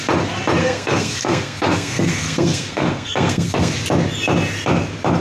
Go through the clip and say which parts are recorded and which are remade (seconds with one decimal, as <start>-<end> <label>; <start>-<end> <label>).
0.0-0.6 recorded; 0.6-3.7 remade; 3.7-5.2 recorded